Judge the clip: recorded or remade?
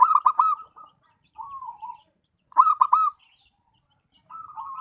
remade